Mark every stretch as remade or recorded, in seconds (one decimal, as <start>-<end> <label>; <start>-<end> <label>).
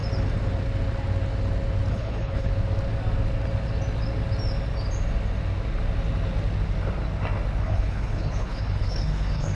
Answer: 0.0-1.9 recorded; 1.9-2.5 remade; 2.5-7.6 recorded; 7.6-9.5 remade